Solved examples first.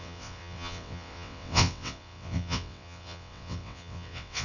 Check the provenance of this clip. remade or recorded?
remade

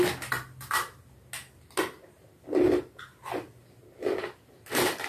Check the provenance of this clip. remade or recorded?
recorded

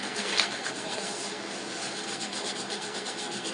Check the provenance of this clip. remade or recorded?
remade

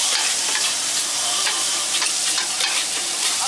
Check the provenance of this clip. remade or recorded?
remade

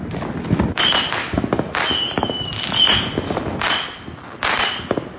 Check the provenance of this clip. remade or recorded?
recorded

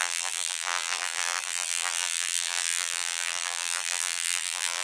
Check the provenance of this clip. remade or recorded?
remade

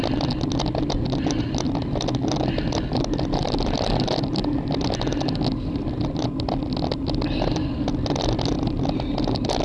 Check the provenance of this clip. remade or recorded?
recorded